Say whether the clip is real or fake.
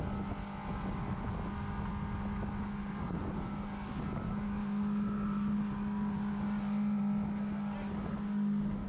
real